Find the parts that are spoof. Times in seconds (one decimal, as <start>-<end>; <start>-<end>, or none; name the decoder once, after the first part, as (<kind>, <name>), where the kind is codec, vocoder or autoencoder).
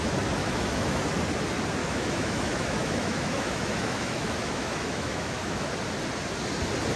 0.4-1.0 (autoencoder, DAC-VAE); 1.8-5.7